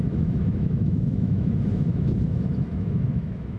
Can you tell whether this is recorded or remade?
remade